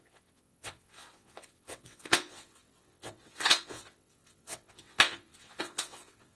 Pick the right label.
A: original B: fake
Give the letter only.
B